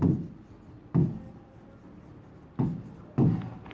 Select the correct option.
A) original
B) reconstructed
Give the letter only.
A